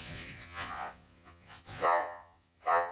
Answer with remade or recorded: remade